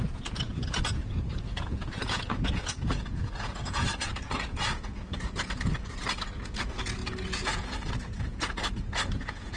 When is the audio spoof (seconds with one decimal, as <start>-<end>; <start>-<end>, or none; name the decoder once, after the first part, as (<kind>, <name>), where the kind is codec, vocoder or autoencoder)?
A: 0.0-9.6 (vocoder, Vocos)